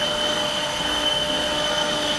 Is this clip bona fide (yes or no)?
no